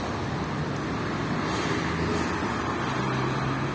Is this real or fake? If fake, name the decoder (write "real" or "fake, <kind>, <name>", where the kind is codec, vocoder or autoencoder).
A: real